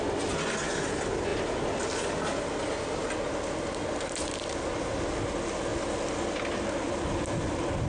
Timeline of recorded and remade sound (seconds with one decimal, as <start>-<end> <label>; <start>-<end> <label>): 0.0-7.9 recorded